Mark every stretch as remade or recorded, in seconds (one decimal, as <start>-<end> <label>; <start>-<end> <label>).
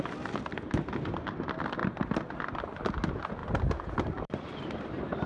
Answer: 0.0-1.8 recorded; 1.8-2.3 remade; 2.3-3.4 recorded; 3.4-5.3 remade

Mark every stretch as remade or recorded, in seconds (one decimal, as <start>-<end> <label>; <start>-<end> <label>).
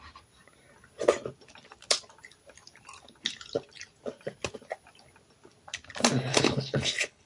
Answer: 0.0-6.3 recorded; 6.3-7.3 remade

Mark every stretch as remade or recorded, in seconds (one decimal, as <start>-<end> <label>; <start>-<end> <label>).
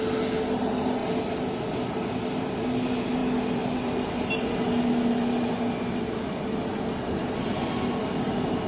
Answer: 0.0-8.7 recorded